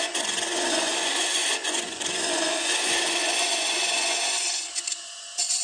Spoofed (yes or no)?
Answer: yes